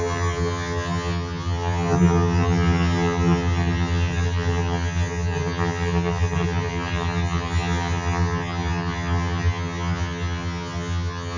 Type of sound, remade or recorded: remade